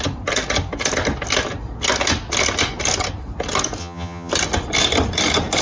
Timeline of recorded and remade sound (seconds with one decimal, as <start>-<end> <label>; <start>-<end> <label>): 0.0-3.8 recorded; 3.8-4.3 remade; 4.3-5.6 recorded